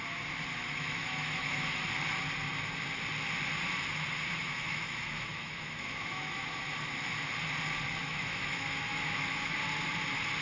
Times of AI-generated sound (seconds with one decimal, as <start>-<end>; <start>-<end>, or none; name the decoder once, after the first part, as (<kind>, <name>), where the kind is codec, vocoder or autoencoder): 0.5-1.8 (autoencoder, DAC-VAE); 4.4-6.6; 8.0-9.6